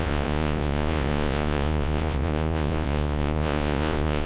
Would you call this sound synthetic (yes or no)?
yes